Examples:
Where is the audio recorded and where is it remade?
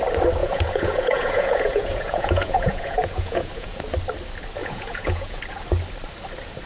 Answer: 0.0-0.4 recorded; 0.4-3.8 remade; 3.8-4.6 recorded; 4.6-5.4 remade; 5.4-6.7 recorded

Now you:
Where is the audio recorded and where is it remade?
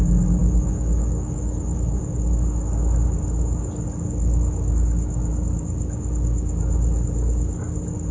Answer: 0.0-0.4 recorded; 0.4-2.0 remade; 2.0-8.1 recorded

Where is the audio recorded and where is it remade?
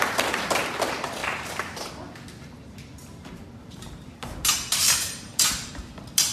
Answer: 0.0-1.2 recorded; 1.2-1.9 remade; 1.9-3.0 recorded; 3.0-4.2 remade; 4.2-4.8 recorded; 4.8-5.7 remade; 5.7-6.3 recorded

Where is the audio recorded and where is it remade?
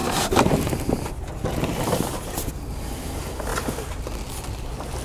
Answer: 0.0-2.5 remade; 2.5-5.0 recorded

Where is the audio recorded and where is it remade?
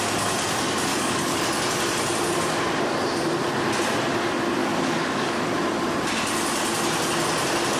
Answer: 0.0-0.9 recorded; 0.9-1.4 remade; 1.4-4.6 recorded; 4.6-5.5 remade; 5.5-7.8 recorded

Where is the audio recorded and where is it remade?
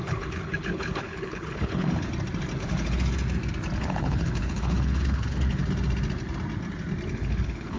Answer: 0.0-2.1 remade; 2.1-2.6 recorded; 2.6-3.1 remade; 3.1-3.8 recorded; 3.8-5.6 remade; 5.6-7.1 recorded; 7.1-7.8 remade